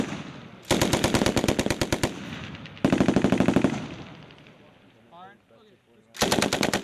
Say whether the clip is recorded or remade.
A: recorded